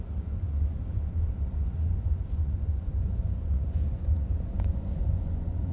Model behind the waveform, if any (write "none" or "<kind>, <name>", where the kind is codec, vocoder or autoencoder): vocoder, Vocos